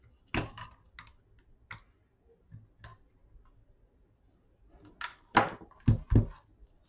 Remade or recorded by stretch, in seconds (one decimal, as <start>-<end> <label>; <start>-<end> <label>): 0.0-6.9 recorded

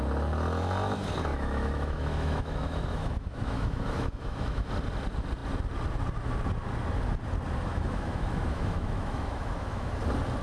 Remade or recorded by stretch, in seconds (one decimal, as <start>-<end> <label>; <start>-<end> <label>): 0.0-1.3 recorded; 1.3-4.7 remade; 4.7-7.7 recorded; 7.7-9.9 remade; 9.9-10.4 recorded

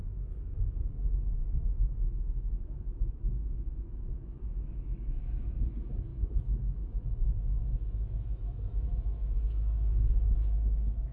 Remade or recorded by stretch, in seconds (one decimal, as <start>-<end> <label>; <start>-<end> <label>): 0.0-11.1 remade

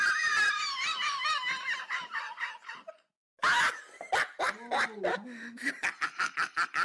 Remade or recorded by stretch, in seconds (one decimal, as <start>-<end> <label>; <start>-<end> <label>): 0.0-5.1 recorded; 5.1-5.7 remade; 5.7-6.8 recorded

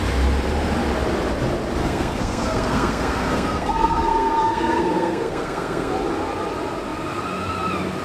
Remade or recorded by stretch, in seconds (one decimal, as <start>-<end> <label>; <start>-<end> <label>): 0.0-1.8 recorded; 1.8-5.9 remade; 5.9-8.0 recorded

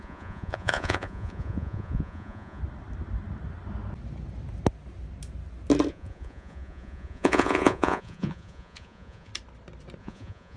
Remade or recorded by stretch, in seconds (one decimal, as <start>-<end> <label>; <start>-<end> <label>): 0.0-2.6 remade; 2.6-5.9 recorded; 5.9-9.3 remade; 9.3-10.0 recorded; 10.0-10.6 remade

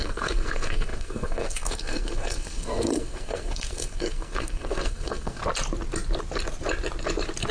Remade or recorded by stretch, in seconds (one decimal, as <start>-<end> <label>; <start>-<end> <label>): 0.0-5.4 remade; 5.4-7.5 recorded

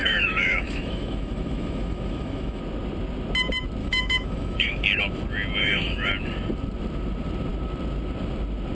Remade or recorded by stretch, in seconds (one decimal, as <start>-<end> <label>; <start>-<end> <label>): 0.0-2.6 remade; 2.6-3.8 recorded; 3.8-5.0 remade; 5.0-5.6 recorded; 5.6-6.1 remade; 6.1-8.7 recorded